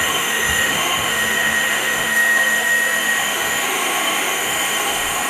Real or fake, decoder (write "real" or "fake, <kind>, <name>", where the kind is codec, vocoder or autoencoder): fake, autoencoder, DAC-VAE